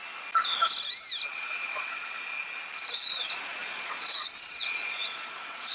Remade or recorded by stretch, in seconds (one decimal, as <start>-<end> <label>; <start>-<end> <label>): 0.0-1.3 recorded; 1.3-2.2 remade; 2.2-2.9 recorded; 2.9-5.7 remade